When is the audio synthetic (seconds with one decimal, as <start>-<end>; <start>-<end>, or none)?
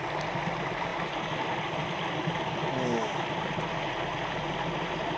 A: none